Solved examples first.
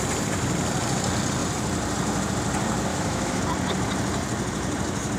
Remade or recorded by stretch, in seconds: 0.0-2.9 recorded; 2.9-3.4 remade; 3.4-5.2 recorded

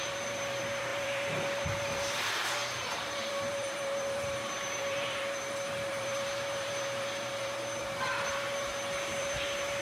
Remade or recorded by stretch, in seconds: 0.0-8.7 remade; 8.7-9.2 recorded; 9.2-9.8 remade

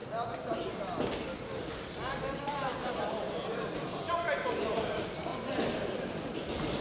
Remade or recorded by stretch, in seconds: 0.0-4.1 remade; 4.1-5.3 recorded; 5.3-6.2 remade; 6.2-6.8 recorded

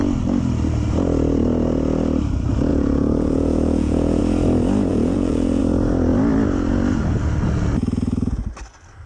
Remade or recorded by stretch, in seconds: 0.0-2.7 recorded; 2.7-4.2 remade; 4.2-4.9 recorded; 4.9-5.6 remade; 5.6-9.1 recorded